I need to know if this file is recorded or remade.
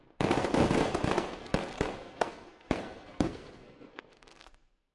remade